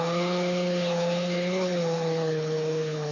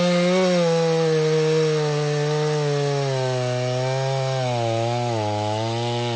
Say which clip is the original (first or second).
second